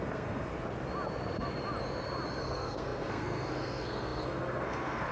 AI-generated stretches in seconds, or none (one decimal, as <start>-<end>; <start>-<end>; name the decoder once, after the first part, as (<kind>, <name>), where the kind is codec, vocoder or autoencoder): 0.0-0.5 (codec, SNAC); 2.4-5.1